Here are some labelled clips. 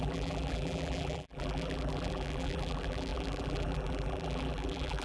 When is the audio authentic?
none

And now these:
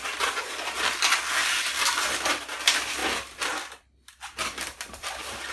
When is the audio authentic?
0.0-3.0

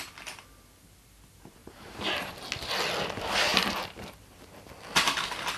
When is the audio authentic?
0.0-1.6; 2.3-5.6

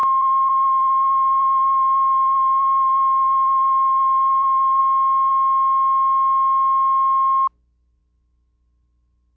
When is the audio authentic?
4.8-9.4

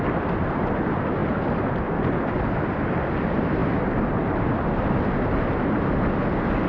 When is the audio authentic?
0.0-6.7

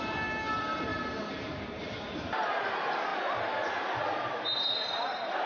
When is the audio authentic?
3.1-5.1

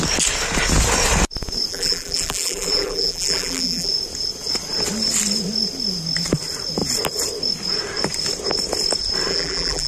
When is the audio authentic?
0.0-1.7; 3.9-9.3